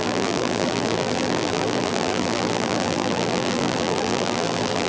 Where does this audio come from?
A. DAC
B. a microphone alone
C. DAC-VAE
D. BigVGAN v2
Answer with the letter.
D